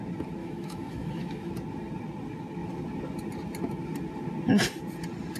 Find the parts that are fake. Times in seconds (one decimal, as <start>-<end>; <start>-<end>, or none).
0.4-1.5